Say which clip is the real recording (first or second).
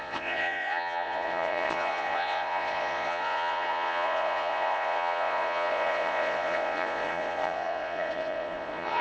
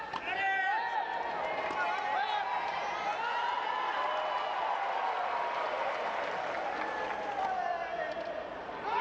second